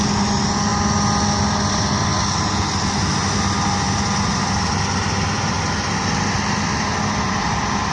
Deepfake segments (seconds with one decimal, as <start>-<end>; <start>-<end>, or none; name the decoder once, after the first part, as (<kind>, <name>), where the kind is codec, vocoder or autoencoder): none